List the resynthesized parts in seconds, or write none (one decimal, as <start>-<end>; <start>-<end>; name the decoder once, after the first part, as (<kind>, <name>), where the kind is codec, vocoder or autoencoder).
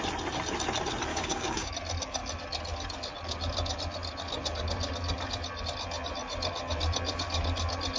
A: 1.1-1.7 (codec, DAC)